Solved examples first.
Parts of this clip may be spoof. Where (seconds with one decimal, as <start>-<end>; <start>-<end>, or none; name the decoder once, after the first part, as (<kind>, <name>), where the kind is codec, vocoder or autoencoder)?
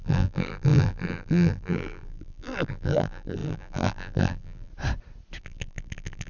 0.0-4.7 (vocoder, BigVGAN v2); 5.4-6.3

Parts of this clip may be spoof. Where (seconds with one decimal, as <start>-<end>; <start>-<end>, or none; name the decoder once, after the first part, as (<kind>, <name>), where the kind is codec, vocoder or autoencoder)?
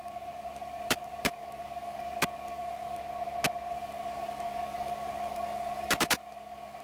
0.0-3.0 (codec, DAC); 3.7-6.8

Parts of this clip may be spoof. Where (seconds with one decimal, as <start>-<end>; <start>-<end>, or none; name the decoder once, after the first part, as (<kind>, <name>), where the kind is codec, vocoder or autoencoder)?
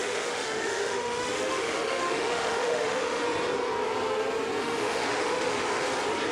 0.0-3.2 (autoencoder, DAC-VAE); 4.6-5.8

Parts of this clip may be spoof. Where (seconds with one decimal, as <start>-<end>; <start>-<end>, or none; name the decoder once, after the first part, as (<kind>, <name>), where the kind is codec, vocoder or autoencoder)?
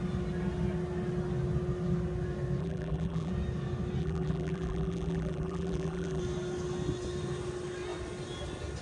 2.6-3.3 (vocoder, BigVGAN v2); 4.0-6.2